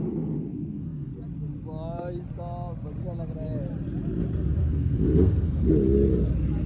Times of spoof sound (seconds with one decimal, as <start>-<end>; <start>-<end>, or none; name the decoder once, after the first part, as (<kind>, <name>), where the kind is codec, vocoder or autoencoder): 0.5-1.1 (codec, SNAC); 4.6-5.7